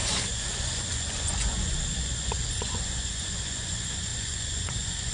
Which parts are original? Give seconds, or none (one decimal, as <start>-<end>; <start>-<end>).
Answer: none